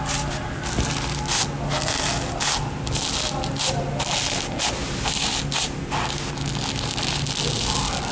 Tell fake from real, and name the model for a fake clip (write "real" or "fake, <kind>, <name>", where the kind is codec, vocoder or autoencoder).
real